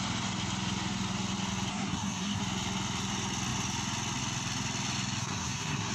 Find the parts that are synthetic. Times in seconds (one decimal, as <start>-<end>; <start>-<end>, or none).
1.7-2.4; 5.2-5.9